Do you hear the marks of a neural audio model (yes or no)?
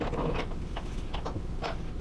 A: no